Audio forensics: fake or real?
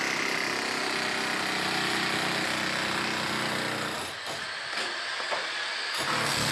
real